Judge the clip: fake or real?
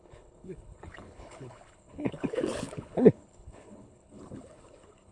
fake